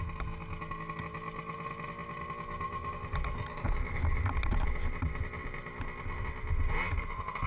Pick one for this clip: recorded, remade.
recorded